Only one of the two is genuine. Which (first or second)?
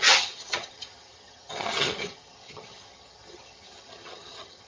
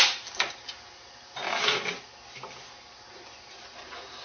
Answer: second